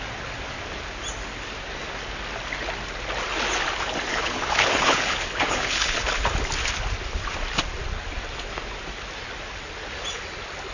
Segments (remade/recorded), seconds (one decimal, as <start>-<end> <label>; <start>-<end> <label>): 0.0-4.1 recorded; 4.1-6.3 remade; 6.3-10.7 recorded